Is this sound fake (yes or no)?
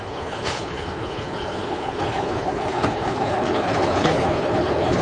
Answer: yes